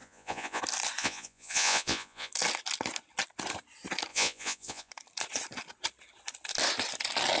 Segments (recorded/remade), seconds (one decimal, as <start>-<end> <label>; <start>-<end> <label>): 0.0-0.6 remade; 0.6-1.0 recorded; 1.0-2.3 remade; 2.3-4.1 recorded; 4.1-4.9 remade; 4.9-7.4 recorded

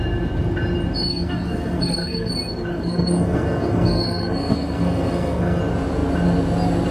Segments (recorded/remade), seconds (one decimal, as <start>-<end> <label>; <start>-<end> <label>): 0.0-1.1 recorded; 1.1-2.3 remade; 2.3-2.7 recorded; 2.7-5.6 remade; 5.6-6.9 recorded

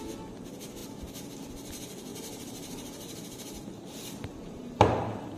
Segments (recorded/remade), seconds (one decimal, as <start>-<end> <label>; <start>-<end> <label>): 0.0-0.8 recorded; 0.8-1.4 remade; 1.4-2.1 recorded; 2.1-5.4 remade

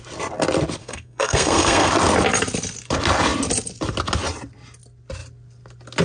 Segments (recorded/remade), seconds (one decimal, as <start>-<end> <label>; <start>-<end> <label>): 0.0-0.8 recorded; 0.8-1.9 remade; 1.9-6.0 recorded